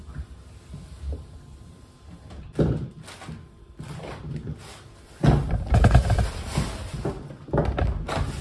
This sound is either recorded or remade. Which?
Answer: recorded